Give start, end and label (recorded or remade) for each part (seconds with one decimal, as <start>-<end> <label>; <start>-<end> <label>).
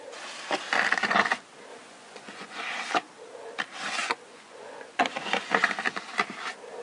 0.0-1.7 recorded; 1.7-2.6 remade; 2.6-4.0 recorded; 4.0-5.7 remade; 5.7-6.8 recorded